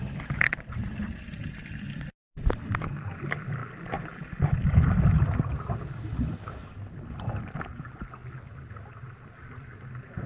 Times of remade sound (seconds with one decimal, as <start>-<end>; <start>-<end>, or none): none